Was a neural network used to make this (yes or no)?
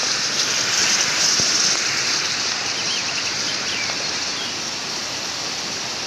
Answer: yes